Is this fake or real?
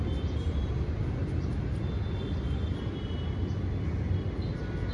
real